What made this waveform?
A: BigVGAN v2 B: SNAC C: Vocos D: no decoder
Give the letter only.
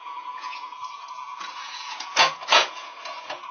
C